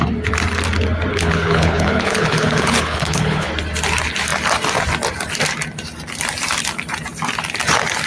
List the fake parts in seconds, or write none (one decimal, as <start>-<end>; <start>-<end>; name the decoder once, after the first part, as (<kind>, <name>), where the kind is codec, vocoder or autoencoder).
1.1-3.5 (codec, HILCodec)